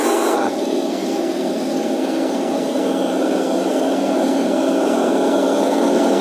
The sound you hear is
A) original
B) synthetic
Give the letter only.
B